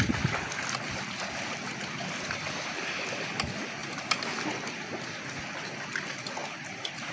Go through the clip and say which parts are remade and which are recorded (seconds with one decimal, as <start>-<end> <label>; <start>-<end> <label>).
0.0-7.1 recorded